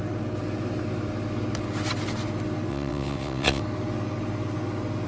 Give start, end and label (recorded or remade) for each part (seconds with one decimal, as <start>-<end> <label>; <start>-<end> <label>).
0.0-2.7 recorded; 2.7-3.6 remade; 3.6-5.1 recorded